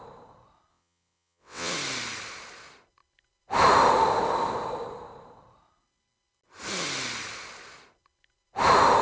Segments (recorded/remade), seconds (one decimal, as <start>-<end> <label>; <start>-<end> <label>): 0.0-0.7 recorded; 0.7-1.7 remade; 1.7-9.0 recorded

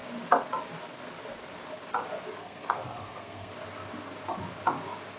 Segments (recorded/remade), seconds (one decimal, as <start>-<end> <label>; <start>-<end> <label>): 0.0-2.4 recorded; 2.4-3.5 remade; 3.5-5.2 recorded

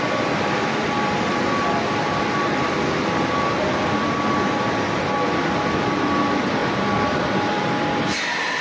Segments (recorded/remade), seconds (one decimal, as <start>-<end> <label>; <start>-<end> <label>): 0.0-8.6 recorded

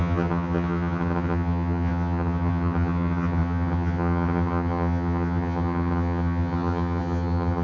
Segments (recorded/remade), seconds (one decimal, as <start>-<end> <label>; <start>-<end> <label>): 0.0-7.6 remade

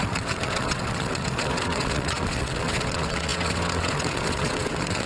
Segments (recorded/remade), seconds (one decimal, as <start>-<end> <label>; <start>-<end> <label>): 0.0-5.1 remade

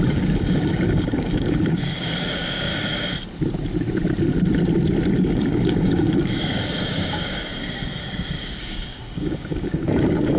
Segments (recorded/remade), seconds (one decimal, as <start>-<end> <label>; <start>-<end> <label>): 0.0-2.7 remade; 2.7-5.1 recorded; 5.1-7.5 remade; 7.5-8.0 recorded; 8.0-10.4 remade

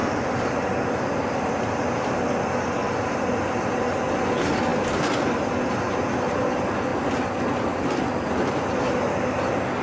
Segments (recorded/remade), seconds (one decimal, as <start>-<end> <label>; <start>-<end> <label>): 0.0-2.2 remade; 2.2-4.7 recorded; 4.7-5.8 remade; 5.8-6.9 recorded; 6.9-8.0 remade; 8.0-9.8 recorded